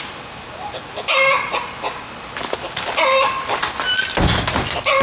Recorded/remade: recorded